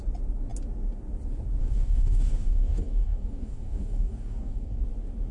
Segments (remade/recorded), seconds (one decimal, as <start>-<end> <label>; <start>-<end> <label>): 0.0-1.6 recorded; 1.6-4.8 remade; 4.8-5.3 recorded